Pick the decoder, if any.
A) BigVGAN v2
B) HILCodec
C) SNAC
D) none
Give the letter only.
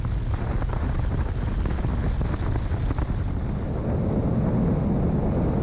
D